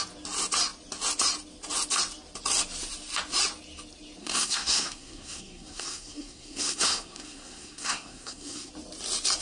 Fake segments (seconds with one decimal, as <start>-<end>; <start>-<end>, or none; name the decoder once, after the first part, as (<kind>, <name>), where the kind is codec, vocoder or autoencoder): 4.2-8.7 (codec, SNAC)